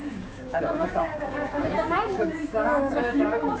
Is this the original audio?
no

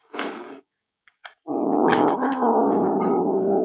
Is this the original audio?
no